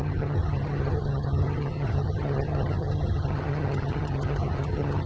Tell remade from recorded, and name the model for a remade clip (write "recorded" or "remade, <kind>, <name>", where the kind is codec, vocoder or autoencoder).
remade, vocoder, HiFi-GAN